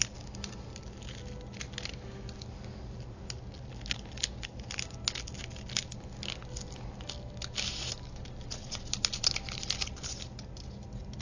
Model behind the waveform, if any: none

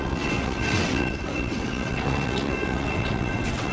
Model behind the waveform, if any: vocoder, WaveNeXt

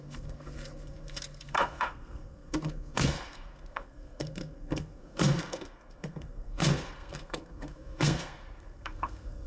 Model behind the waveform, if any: codec, SNAC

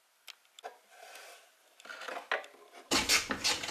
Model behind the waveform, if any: none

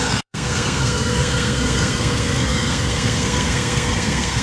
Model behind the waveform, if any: codec, SNAC